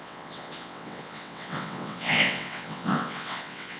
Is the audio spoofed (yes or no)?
yes